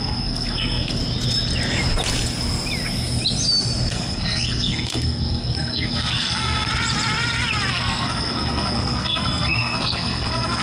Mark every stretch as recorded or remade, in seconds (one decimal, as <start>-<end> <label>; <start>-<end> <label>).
0.0-1.0 remade; 1.0-3.9 recorded; 3.9-6.7 remade; 6.7-7.7 recorded; 7.7-10.6 remade